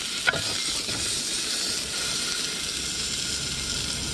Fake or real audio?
real